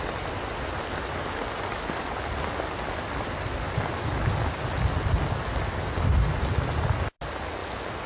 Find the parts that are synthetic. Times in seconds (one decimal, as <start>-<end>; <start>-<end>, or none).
none